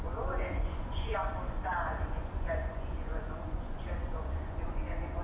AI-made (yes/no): yes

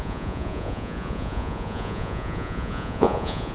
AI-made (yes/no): yes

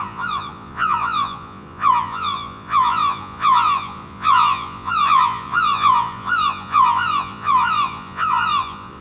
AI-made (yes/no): yes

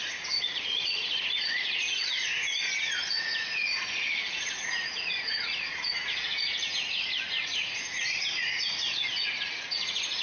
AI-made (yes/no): yes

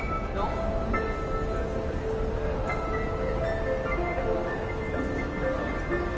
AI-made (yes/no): no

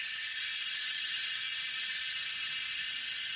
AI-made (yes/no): yes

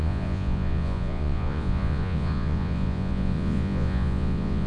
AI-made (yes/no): yes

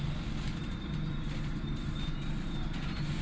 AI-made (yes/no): no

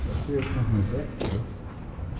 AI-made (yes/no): no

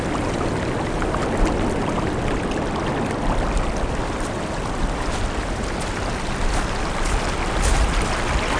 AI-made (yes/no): no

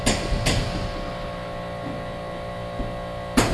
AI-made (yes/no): no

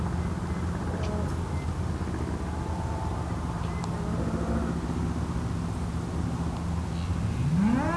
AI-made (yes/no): no